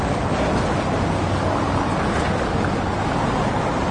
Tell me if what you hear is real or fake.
real